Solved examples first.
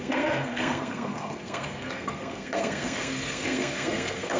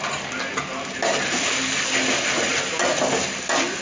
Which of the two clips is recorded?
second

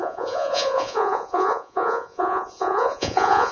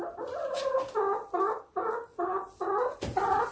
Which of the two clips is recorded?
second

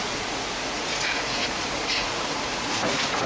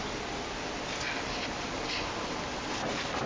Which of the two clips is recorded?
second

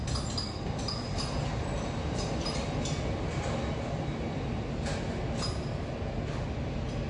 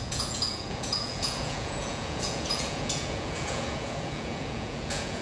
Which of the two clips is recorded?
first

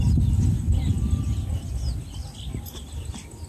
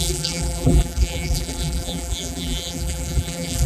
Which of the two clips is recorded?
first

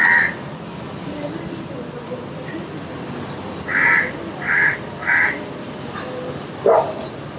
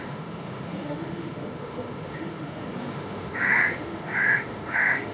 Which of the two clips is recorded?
first